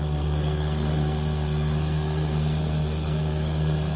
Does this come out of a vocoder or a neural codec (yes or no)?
yes